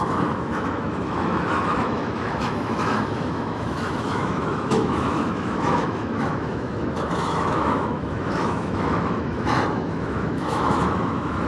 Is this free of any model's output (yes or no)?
no